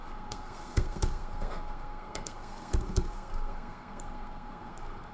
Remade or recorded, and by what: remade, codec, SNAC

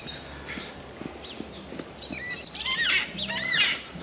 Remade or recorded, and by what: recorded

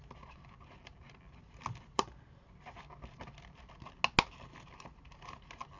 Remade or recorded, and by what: recorded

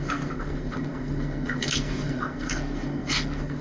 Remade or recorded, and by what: remade, codec, SNAC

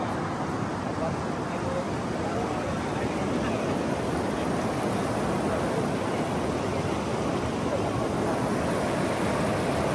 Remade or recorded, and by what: recorded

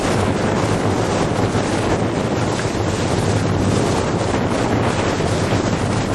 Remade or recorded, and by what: recorded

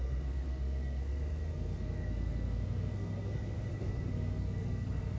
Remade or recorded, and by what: remade, codec, SNAC